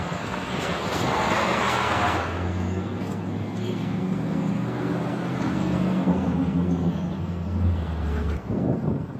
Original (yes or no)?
no